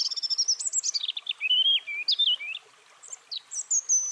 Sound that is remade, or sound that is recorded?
recorded